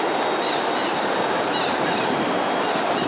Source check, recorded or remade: recorded